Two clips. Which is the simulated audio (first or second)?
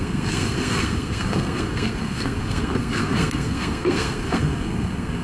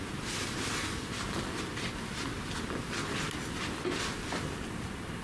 first